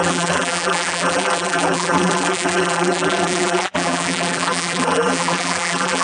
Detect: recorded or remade remade